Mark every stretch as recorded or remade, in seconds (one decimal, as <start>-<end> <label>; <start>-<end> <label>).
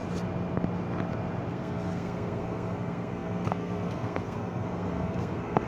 0.0-1.5 recorded; 1.5-5.7 remade